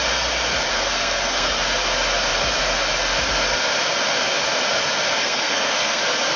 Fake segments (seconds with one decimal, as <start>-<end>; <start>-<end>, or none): 0.7-1.5; 5.2-6.0